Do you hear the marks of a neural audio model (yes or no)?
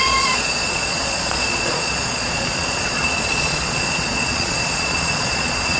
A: yes